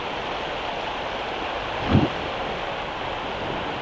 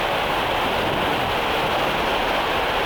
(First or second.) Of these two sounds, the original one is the second